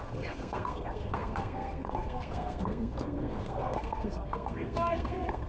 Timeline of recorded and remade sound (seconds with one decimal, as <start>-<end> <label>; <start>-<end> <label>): 0.0-5.5 remade